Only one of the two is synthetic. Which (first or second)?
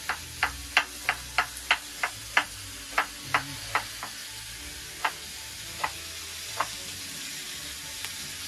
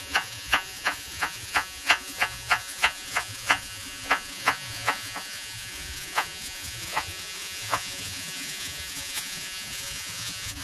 second